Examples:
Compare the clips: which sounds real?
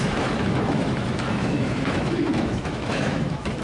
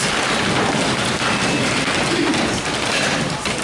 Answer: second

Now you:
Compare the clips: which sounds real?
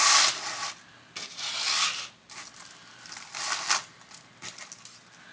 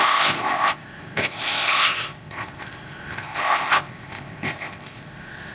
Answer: first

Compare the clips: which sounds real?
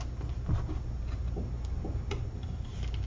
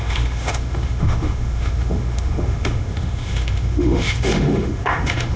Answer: first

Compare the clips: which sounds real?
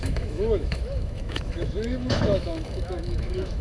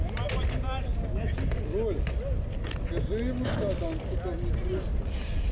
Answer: second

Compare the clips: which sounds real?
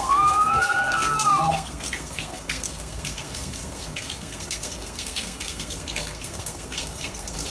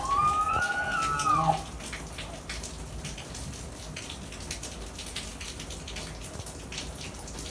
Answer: second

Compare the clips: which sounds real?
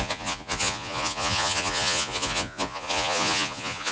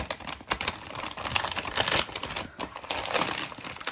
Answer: second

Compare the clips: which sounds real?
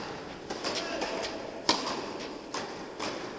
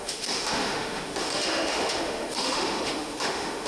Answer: first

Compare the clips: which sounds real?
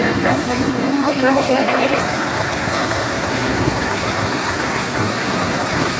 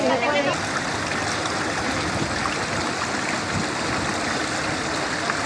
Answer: second